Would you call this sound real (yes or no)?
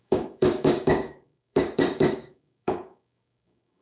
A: no